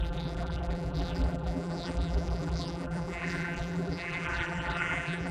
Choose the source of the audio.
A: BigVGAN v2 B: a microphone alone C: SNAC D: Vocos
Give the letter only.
A